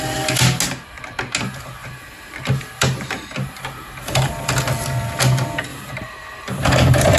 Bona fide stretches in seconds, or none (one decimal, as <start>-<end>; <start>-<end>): 0.0-1.8; 4.5-5.7